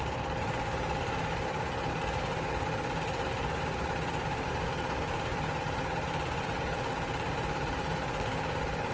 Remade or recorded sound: remade